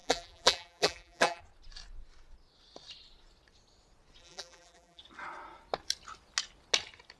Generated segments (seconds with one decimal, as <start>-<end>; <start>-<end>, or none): 0.0-1.4; 4.2-5.0